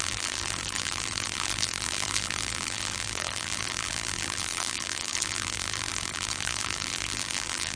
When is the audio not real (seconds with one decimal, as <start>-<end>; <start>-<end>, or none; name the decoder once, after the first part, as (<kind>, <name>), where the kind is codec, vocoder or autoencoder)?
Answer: 0.0-7.8 (vocoder, BigVGAN v2)